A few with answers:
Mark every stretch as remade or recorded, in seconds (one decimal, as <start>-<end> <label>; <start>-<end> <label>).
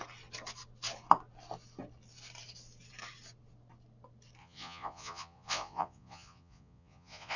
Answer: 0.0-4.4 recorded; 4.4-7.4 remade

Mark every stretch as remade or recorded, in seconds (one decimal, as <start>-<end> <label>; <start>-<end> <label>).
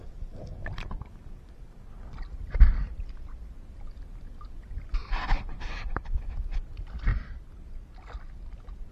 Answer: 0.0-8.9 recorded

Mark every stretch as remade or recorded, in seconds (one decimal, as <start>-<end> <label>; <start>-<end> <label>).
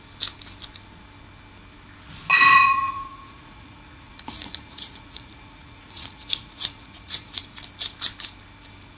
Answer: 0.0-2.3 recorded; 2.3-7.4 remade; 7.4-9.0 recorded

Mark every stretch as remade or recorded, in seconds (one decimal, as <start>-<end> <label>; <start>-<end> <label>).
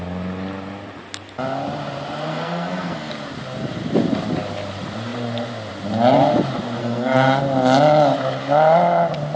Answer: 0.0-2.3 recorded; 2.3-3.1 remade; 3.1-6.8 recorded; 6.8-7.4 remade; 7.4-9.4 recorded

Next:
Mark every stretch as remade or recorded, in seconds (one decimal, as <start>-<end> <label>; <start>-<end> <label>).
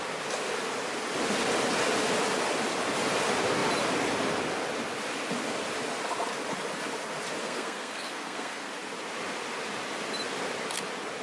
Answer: 0.0-7.4 recorded; 7.4-8.7 remade; 8.7-11.2 recorded